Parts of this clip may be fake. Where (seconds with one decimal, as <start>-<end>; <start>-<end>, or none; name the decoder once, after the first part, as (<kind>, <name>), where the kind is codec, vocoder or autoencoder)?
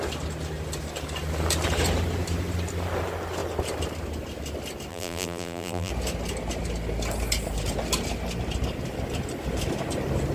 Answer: 4.9-5.9 (vocoder, BigVGAN v2)